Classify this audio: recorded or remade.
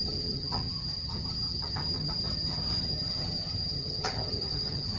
remade